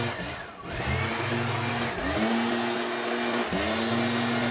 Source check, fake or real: real